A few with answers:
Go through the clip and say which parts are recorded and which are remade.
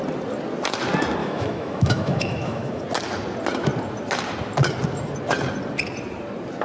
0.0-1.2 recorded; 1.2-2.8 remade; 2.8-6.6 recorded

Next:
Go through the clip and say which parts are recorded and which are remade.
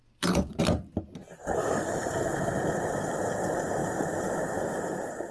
0.0-0.6 remade; 0.6-1.2 recorded; 1.2-3.0 remade; 3.0-3.8 recorded; 3.8-4.8 remade; 4.8-5.3 recorded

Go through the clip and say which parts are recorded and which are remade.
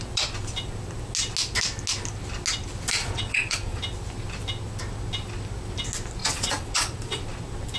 0.0-3.0 recorded; 3.0-3.8 remade; 3.8-6.2 recorded; 6.2-7.2 remade; 7.2-7.8 recorded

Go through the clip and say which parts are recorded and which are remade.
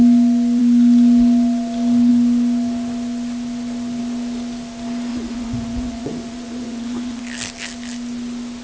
0.0-5.1 recorded; 5.1-7.2 remade; 7.2-8.6 recorded